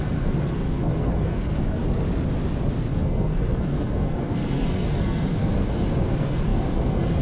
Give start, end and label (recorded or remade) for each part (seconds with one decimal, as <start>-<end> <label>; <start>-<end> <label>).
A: 0.0-1.8 remade; 1.8-2.9 recorded; 2.9-7.2 remade